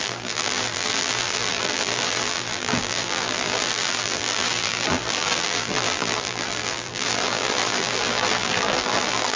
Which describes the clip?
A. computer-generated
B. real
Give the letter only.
A